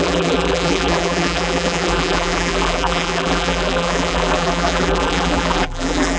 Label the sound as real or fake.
fake